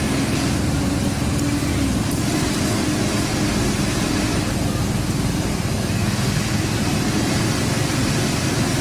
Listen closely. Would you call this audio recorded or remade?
recorded